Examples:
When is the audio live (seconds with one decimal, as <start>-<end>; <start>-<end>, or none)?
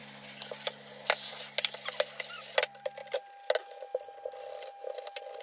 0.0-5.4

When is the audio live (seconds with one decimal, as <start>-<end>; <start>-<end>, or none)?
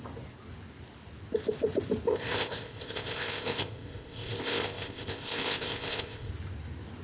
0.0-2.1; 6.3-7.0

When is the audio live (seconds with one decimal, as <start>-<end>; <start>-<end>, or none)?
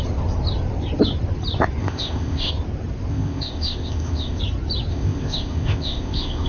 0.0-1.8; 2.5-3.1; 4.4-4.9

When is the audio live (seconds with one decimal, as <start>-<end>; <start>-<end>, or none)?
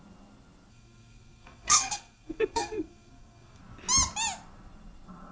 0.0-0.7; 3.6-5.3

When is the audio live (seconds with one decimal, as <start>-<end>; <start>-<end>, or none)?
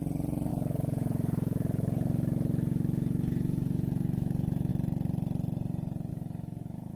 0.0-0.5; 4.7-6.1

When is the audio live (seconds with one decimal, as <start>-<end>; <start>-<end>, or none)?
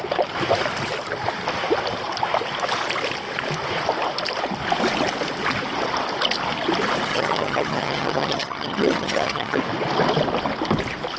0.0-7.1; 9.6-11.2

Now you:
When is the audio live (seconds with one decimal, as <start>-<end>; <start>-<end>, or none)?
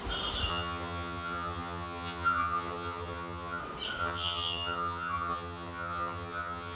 0.0-0.5; 3.6-4.0